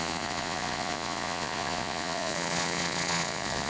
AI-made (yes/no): yes